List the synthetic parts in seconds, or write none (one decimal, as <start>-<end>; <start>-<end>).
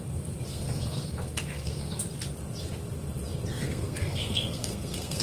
0.5-2.0; 3.5-5.2